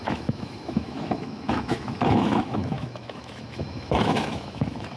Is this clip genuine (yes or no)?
no